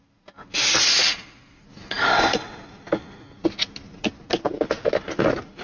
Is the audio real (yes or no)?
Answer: yes